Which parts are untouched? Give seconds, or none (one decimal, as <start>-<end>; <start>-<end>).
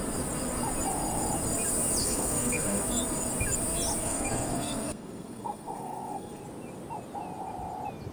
0.0-2.0; 2.8-4.0; 6.4-8.1